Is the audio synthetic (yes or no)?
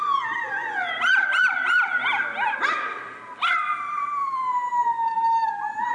no